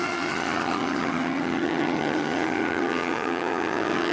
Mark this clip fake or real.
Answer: fake